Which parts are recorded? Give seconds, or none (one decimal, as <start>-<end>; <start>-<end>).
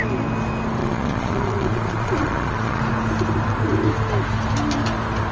0.0-0.8; 2.8-5.3